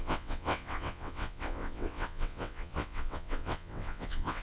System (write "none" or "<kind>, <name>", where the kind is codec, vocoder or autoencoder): vocoder, WaveNeXt